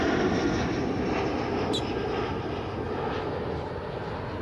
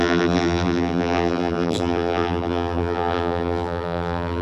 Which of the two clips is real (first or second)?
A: first